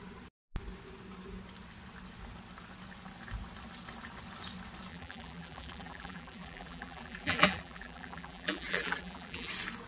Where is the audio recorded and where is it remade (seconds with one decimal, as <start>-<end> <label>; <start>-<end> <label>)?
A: 0.0-4.9 recorded; 4.9-9.5 remade; 9.5-9.9 recorded